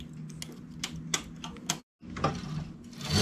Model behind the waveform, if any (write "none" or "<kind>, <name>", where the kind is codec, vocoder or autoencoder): none